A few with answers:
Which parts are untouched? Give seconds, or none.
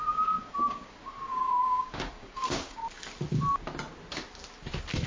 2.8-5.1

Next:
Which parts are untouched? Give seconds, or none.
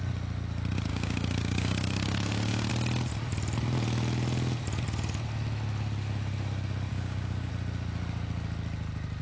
0.0-0.9; 2.7-6.9; 7.5-9.2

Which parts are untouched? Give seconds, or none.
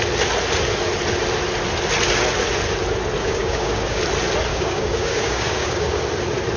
0.0-3.2; 4.0-4.5; 6.0-6.6